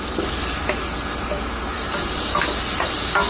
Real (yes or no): yes